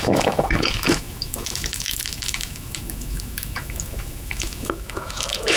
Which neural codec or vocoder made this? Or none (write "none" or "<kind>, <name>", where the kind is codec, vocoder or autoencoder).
autoencoder, DAC-VAE